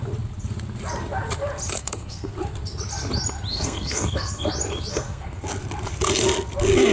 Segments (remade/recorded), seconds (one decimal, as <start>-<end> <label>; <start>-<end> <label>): 0.0-1.8 recorded; 1.8-2.3 remade; 2.3-3.5 recorded; 3.5-4.5 remade; 4.5-4.9 recorded; 4.9-5.4 remade; 5.4-6.9 recorded